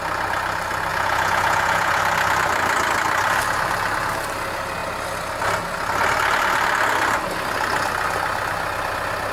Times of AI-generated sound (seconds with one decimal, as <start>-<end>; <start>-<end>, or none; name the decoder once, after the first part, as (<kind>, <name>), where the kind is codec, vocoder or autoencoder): 0.9-2.0 (vocoder, Vocos)